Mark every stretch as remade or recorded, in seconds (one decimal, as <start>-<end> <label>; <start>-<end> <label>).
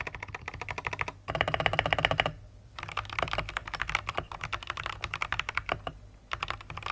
0.0-6.9 recorded